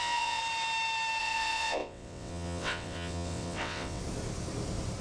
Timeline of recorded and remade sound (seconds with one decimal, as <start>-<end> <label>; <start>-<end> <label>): 0.0-0.4 remade; 0.4-1.2 recorded; 1.2-4.0 remade; 4.0-5.0 recorded